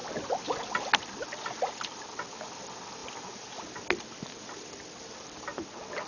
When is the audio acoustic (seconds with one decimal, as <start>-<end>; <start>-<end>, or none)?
0.0-6.1

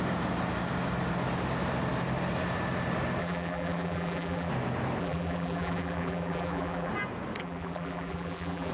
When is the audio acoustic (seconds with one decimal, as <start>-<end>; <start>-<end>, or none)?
0.0-3.2; 4.5-5.0; 6.9-7.4

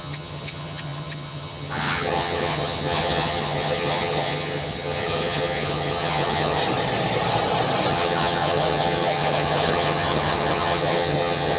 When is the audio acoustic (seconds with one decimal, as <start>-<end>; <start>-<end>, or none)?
6.6-7.9

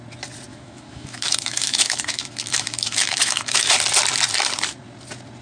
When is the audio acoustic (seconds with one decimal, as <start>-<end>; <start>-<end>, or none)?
0.0-0.5; 3.7-5.4